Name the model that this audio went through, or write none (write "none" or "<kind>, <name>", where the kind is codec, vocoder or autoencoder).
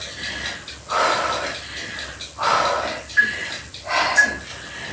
none